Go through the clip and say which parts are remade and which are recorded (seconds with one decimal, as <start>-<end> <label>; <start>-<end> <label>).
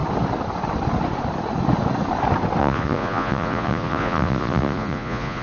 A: 0.0-2.6 recorded; 2.6-5.4 remade